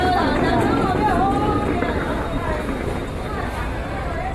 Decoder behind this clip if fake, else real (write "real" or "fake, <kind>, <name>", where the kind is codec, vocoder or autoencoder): real